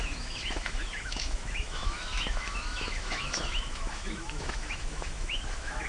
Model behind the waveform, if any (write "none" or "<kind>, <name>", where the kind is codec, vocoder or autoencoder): autoencoder, DAC-VAE